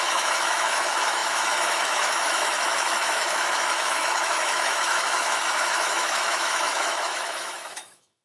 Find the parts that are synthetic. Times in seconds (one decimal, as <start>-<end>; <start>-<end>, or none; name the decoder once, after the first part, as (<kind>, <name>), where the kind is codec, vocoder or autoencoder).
0.0-8.2 (autoencoder, DAC-VAE)